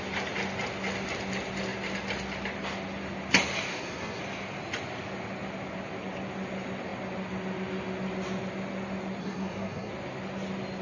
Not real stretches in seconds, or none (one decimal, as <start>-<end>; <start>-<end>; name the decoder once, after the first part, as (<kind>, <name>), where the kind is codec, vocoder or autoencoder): 3.7-4.2 (codec, SNAC); 9.2-9.9